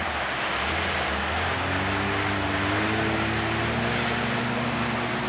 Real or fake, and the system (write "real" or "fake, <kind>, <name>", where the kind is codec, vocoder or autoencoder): real